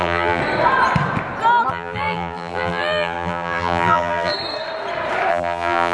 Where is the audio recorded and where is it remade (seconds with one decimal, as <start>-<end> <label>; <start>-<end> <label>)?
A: 0.0-0.4 remade; 0.4-1.7 recorded; 1.7-4.3 remade; 4.3-5.3 recorded; 5.3-5.9 remade